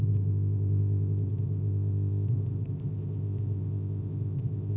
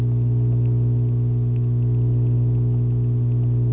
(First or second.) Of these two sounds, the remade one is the first